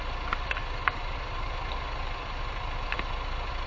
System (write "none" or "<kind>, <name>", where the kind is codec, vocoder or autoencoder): none